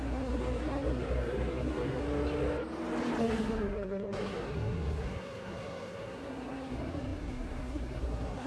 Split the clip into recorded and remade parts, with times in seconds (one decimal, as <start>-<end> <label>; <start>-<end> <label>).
0.0-2.0 remade; 2.0-3.2 recorded; 3.2-8.5 remade